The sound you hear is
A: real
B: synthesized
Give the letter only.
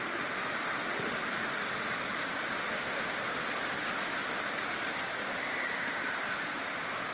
B